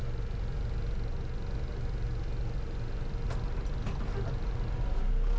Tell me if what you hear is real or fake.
real